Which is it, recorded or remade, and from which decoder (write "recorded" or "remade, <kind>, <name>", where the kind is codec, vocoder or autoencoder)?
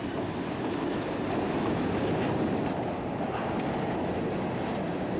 recorded